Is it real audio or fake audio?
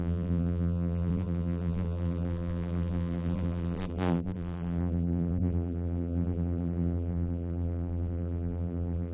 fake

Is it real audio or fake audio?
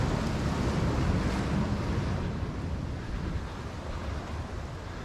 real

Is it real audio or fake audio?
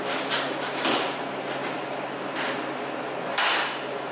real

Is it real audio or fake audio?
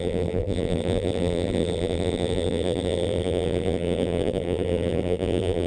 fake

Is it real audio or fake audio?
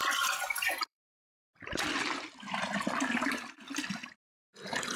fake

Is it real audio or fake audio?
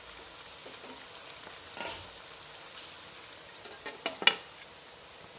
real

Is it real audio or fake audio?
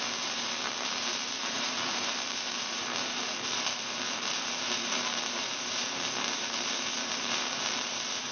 fake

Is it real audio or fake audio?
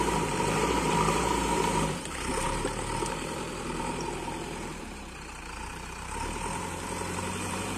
fake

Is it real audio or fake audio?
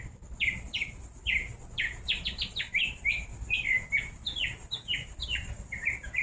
real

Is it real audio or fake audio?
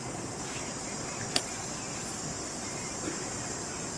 real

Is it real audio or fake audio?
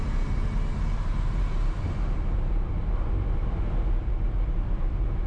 real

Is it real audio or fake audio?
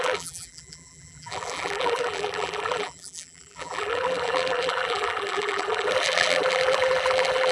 fake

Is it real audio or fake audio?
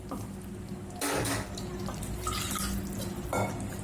real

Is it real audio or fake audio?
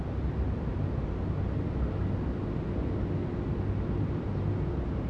real